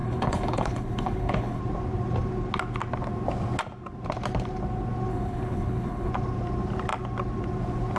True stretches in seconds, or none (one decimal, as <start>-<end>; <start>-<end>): 1.6-5.1; 6.1-8.0